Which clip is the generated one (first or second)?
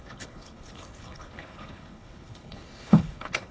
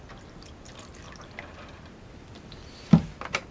first